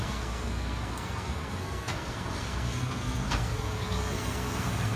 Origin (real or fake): fake